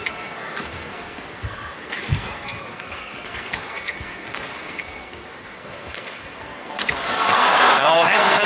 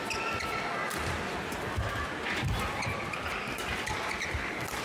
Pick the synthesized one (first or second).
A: first